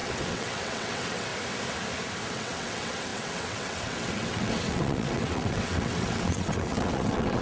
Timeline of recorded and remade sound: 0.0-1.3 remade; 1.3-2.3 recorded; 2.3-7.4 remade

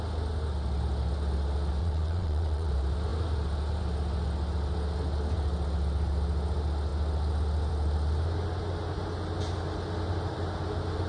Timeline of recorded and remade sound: 0.0-1.8 recorded; 1.8-2.7 remade; 2.7-11.1 recorded

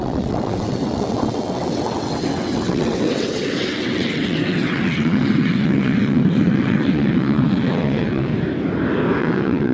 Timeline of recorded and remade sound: 0.0-8.3 remade; 8.3-9.2 recorded; 9.2-9.7 remade

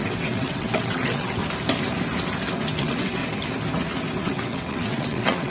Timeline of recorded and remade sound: 0.0-1.4 remade; 1.4-2.8 recorded; 2.8-3.2 remade; 3.2-4.2 recorded; 4.2-5.5 remade

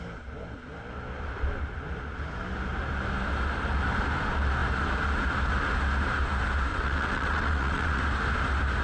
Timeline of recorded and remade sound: 0.0-6.7 recorded; 6.7-8.0 remade; 8.0-8.8 recorded